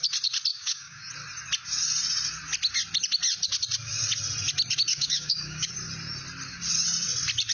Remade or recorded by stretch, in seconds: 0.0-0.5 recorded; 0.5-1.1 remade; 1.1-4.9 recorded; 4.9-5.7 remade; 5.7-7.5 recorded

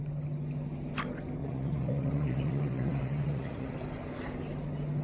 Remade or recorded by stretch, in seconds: 0.0-1.4 recorded; 1.4-3.7 remade; 3.7-5.0 recorded

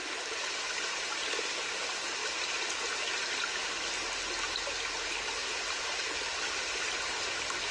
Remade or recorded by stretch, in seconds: 0.0-1.5 remade; 1.5-7.7 recorded

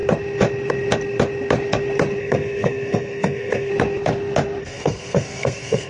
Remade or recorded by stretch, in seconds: 0.0-2.2 recorded; 2.2-3.7 remade; 3.7-4.6 recorded; 4.6-5.9 remade

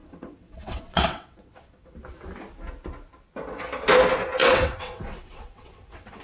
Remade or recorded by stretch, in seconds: 0.0-1.9 remade; 1.9-4.4 recorded; 4.4-6.2 remade

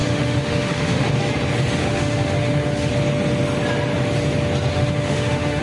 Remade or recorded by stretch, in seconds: 0.0-1.1 remade; 1.1-1.8 recorded; 1.8-2.9 remade; 2.9-4.7 recorded; 4.7-5.6 remade

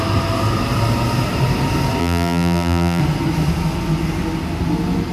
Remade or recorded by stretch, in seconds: 0.0-2.0 recorded; 2.0-3.0 remade; 3.0-5.1 recorded